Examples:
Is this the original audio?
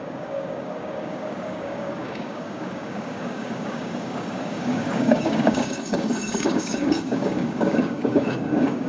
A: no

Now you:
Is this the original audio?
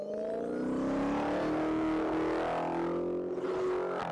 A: yes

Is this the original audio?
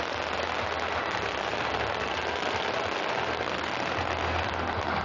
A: yes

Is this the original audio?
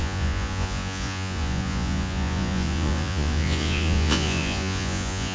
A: no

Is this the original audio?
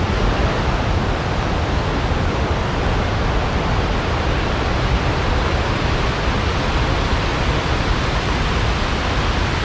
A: yes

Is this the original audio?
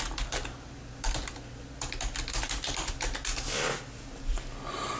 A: yes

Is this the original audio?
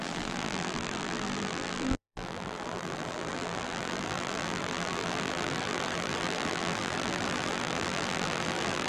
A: no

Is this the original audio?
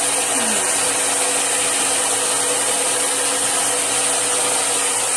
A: yes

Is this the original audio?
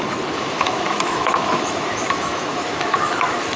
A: no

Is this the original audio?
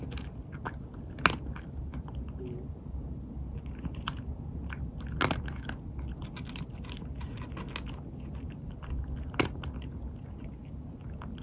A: yes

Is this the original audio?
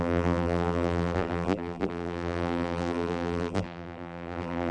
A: no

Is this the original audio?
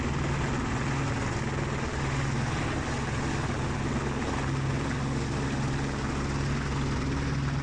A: yes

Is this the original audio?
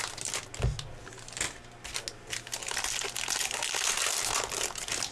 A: yes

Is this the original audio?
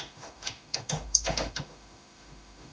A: no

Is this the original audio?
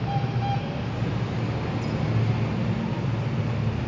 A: yes